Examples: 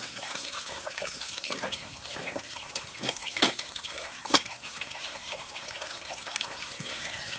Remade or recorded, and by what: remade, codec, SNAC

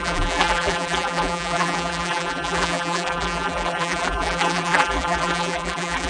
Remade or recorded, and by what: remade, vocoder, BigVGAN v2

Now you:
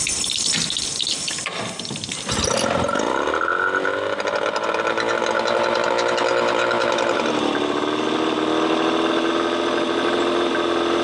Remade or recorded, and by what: recorded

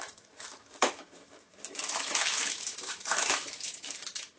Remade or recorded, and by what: remade, autoencoder, DAC-VAE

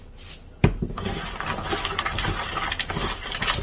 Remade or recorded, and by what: recorded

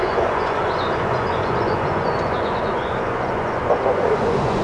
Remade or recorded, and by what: remade, vocoder, Vocos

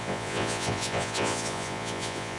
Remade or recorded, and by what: remade, vocoder, Vocos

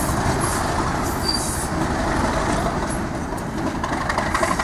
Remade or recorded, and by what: recorded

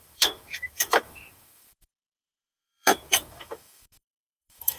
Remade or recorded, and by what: remade, autoencoder, DAC-VAE